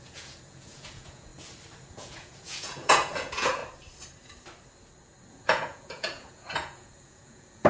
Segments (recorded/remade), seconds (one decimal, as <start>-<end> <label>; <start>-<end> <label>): 0.0-1.3 remade; 1.3-1.9 recorded; 1.9-3.6 remade; 3.6-5.3 recorded; 5.3-7.7 remade